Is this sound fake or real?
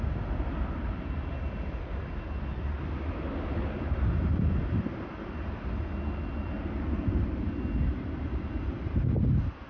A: real